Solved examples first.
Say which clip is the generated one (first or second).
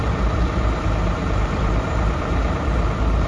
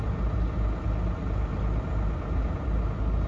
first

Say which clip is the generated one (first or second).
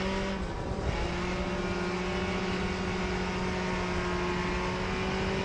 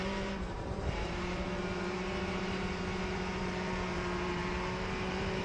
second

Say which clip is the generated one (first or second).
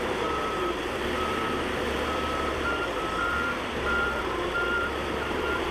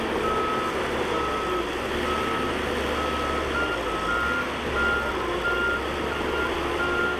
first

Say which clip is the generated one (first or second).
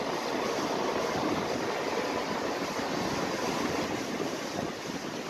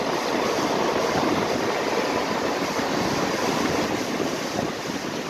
second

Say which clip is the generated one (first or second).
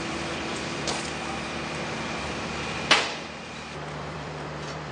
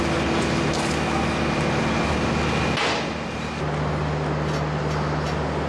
first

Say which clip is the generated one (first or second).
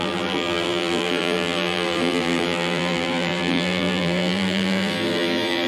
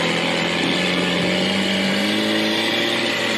first